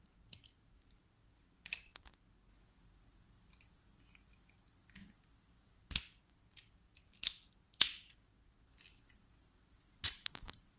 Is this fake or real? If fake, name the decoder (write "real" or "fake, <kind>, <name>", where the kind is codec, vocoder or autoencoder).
real